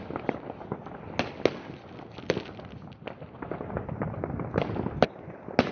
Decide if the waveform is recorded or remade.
recorded